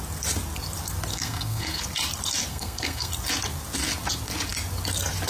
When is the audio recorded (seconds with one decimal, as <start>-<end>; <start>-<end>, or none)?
0.0-1.1; 1.8-2.5; 3.1-5.3